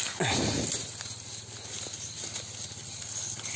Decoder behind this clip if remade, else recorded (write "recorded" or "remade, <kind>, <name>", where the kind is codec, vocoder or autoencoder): recorded